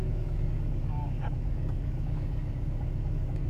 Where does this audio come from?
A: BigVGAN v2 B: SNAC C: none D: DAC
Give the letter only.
D